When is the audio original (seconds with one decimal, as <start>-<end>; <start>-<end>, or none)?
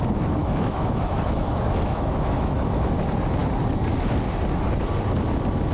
0.0-0.4; 3.0-5.7